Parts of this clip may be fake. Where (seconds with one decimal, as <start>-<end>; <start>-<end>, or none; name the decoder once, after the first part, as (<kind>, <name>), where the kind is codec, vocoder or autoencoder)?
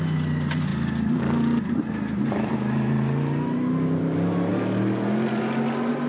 none